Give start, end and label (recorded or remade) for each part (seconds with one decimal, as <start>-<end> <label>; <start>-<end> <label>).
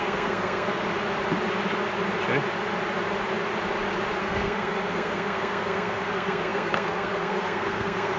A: 0.0-0.8 remade; 0.8-4.2 recorded; 4.2-8.2 remade